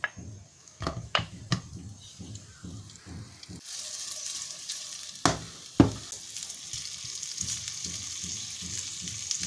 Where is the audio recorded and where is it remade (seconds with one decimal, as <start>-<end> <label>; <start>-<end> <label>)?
0.0-0.5 recorded; 0.5-1.4 remade; 1.4-9.5 recorded